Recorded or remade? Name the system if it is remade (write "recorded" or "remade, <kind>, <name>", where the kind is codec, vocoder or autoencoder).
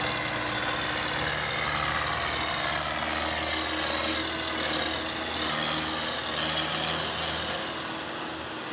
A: recorded